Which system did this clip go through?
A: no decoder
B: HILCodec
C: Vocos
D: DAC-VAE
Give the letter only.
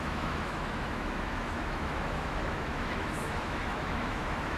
D